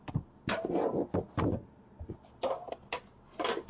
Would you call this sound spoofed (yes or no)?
no